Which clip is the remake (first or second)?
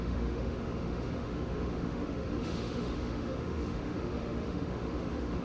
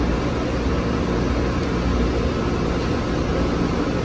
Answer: first